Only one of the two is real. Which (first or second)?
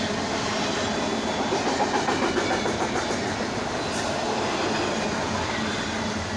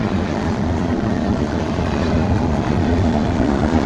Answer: first